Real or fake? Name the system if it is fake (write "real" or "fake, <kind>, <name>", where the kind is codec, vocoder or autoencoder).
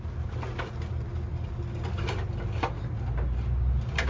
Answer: real